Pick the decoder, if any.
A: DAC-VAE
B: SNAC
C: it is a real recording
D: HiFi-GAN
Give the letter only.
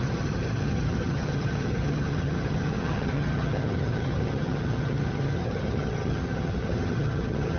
D